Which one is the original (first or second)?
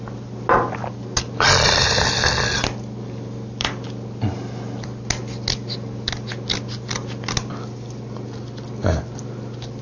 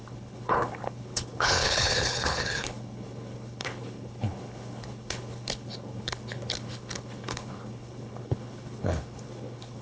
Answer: first